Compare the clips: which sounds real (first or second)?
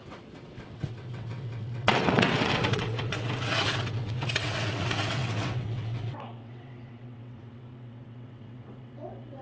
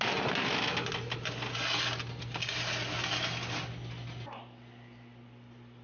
second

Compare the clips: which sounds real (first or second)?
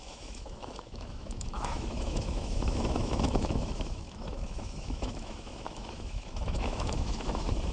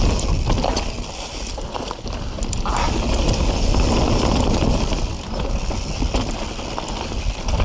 second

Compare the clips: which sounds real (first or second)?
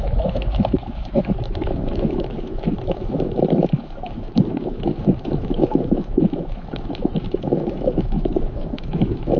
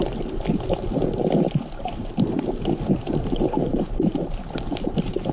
second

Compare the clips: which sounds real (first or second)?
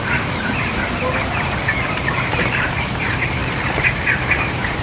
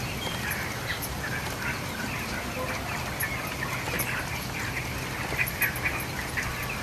second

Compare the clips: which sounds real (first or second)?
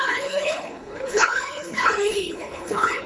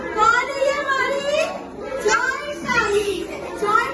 second